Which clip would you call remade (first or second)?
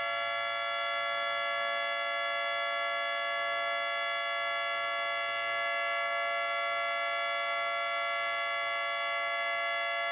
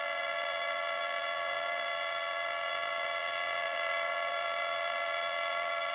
second